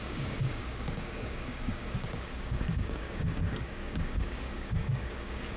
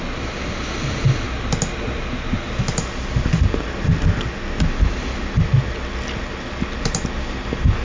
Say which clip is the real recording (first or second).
second